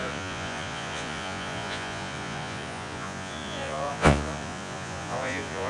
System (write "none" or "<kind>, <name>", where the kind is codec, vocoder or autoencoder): vocoder, Vocos